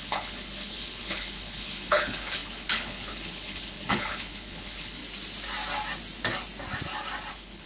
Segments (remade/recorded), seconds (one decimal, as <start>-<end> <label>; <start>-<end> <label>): 0.0-5.0 remade; 5.0-7.3 recorded; 7.3-7.7 remade

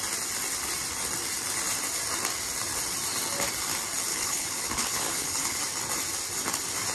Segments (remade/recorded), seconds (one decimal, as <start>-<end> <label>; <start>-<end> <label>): 0.0-4.1 recorded; 4.1-5.6 remade; 5.6-6.9 recorded

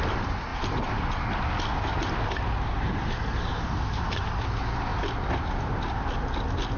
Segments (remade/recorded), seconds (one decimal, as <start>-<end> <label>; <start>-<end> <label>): 0.0-6.8 recorded

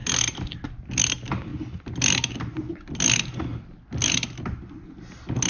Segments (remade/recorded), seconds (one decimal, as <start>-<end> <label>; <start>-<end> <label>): 0.0-5.5 recorded

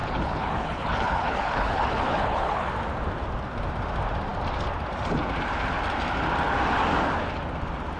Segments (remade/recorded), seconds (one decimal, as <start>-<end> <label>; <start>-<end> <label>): 0.0-2.7 remade; 2.7-8.0 recorded

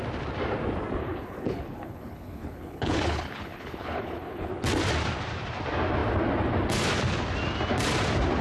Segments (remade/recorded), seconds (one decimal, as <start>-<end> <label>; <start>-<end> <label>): 0.0-1.0 recorded; 1.0-4.5 remade; 4.5-8.4 recorded